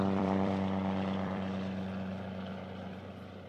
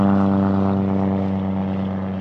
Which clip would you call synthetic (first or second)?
first